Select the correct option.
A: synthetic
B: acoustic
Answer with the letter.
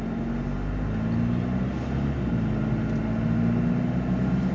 B